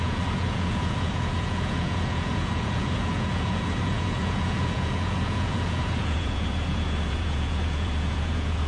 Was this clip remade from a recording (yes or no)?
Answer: yes